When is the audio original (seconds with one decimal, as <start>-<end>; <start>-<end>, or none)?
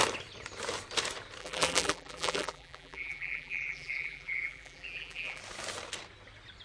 0.0-1.4; 5.4-6.6